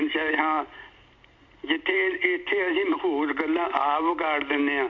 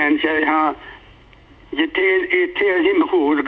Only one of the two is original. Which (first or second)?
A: first